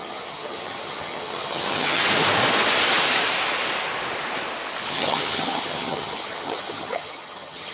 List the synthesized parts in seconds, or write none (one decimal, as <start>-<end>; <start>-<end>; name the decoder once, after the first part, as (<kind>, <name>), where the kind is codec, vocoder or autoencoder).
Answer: 0.0-2.0 (vocoder, HiFi-GAN); 4.9-7.7